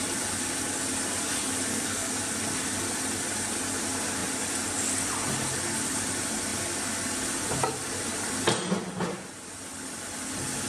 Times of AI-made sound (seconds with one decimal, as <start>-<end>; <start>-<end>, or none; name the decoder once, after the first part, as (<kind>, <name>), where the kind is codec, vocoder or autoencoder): 1.7-2.2 (codec, SNAC)